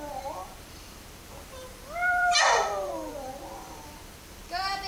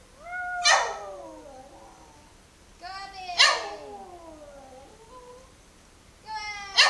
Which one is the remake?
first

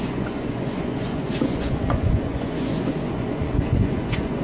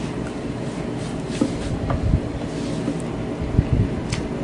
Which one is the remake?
first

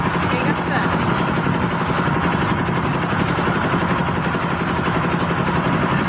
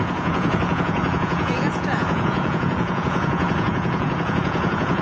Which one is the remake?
second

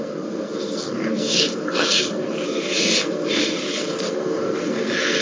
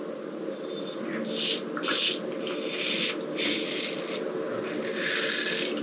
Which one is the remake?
first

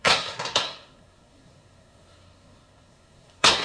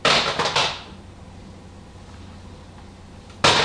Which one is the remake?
first